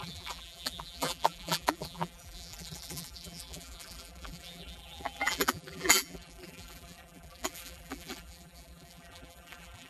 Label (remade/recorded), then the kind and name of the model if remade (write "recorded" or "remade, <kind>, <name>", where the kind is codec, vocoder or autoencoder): remade, vocoder, BigVGAN v2